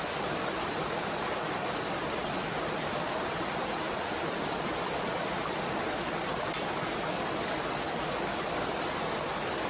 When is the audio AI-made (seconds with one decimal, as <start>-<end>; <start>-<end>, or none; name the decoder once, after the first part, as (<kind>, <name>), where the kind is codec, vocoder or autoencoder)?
none